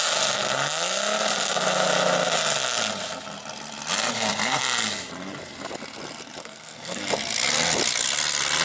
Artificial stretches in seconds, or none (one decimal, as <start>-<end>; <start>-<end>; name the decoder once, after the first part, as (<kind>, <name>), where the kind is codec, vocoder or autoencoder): 6.4-7.0 (codec, SNAC)